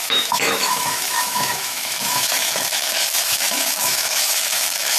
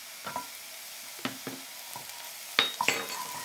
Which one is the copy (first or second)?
first